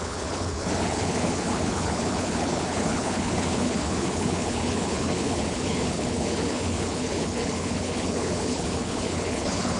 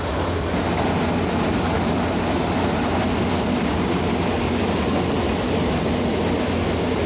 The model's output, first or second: first